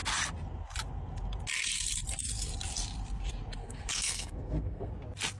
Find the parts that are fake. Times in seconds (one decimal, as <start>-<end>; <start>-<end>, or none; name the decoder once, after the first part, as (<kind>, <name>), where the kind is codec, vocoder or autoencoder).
3.6-4.9 (codec, SNAC)